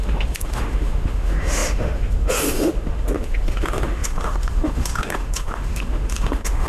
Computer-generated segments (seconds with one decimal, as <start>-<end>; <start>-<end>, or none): 0.0-6.7